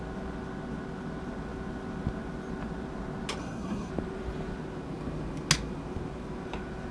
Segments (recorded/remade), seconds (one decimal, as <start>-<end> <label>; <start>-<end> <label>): 0.0-3.4 recorded; 3.4-3.9 remade; 3.9-6.9 recorded